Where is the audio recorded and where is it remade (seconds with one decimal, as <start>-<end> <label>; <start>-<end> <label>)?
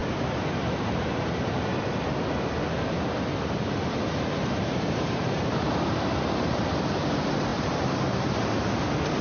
0.0-1.0 remade; 1.0-4.4 recorded; 4.4-6.5 remade; 6.5-7.5 recorded; 7.5-8.4 remade; 8.4-9.2 recorded